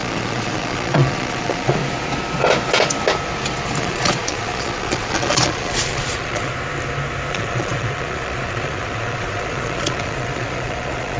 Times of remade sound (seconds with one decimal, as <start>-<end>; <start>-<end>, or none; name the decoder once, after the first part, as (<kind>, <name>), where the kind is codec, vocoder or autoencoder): 0.0-1.8 (vocoder, Vocos); 3.8-6.5; 7.3-11.2